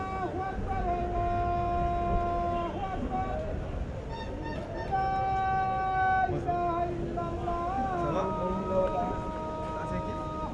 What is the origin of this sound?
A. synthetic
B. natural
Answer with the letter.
B